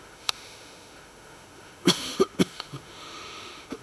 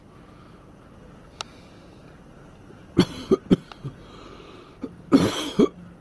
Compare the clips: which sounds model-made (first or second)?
first